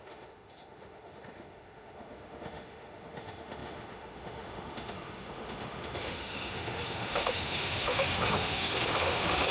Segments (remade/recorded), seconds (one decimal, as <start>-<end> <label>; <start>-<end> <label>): 0.0-9.5 remade